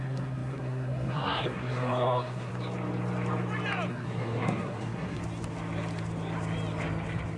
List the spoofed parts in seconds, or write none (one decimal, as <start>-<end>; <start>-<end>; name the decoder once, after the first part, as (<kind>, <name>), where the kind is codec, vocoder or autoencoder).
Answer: 0.0-2.5 (codec, SNAC); 3.9-5.2